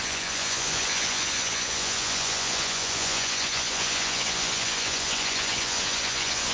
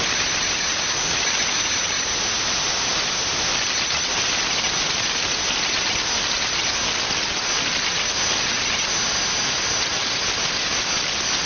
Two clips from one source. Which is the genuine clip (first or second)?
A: second